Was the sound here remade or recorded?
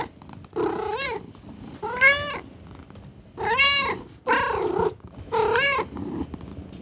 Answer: recorded